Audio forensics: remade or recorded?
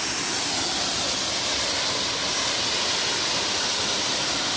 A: recorded